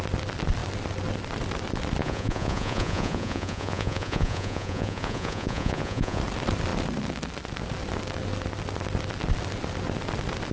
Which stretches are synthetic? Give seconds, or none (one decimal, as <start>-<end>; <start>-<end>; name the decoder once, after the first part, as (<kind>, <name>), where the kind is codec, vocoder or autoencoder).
2.0-6.2 (vocoder, Vocos)